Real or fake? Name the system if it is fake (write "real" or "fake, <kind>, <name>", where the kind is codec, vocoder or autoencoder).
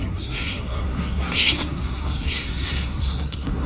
fake, codec, SNAC